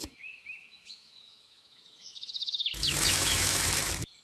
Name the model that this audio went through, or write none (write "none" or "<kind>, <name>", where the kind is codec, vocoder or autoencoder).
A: autoencoder, DAC-VAE